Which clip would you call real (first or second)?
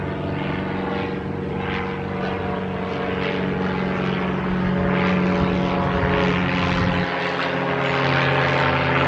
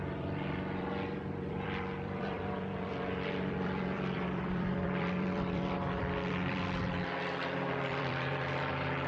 first